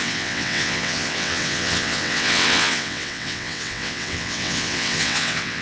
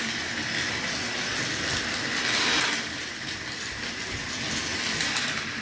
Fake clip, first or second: first